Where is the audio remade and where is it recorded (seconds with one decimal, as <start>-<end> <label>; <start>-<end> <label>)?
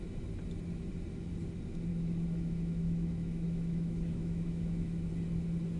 0.0-1.9 recorded; 1.9-5.1 remade; 5.1-5.8 recorded